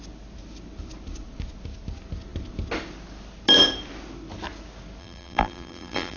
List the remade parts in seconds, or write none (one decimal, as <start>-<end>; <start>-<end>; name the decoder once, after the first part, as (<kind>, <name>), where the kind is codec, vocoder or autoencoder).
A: 5.0-6.2 (vocoder, BigVGAN v2)